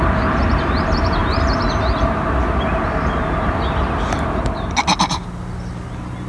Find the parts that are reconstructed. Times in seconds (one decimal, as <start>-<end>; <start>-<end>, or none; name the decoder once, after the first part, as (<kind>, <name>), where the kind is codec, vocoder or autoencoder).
none